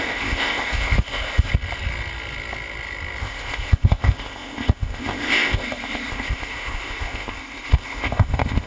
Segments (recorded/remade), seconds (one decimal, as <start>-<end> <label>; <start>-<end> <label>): 0.0-1.5 remade; 1.5-3.2 recorded; 3.2-8.7 remade

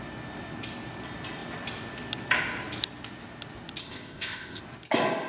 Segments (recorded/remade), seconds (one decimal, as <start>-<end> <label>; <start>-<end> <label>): 0.0-3.8 recorded; 3.8-4.6 remade; 4.6-5.3 recorded

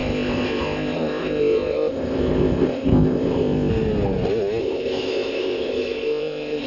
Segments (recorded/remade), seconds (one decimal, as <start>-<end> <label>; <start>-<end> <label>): 0.0-3.7 remade; 3.7-4.6 recorded; 4.6-6.7 remade

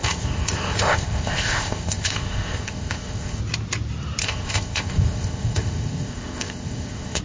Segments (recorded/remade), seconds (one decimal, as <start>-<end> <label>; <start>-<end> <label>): 0.0-3.4 remade; 3.4-4.2 recorded; 4.2-7.2 remade

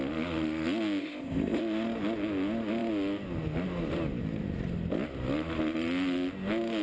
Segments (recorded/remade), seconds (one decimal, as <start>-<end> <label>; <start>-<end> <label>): 0.0-1.0 recorded; 1.0-1.6 remade; 1.6-6.8 recorded

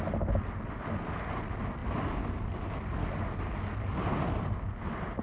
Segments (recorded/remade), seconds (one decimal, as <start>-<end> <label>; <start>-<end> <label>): 0.0-5.2 recorded